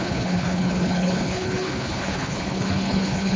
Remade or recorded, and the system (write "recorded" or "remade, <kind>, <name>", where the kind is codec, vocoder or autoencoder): remade, codec, HILCodec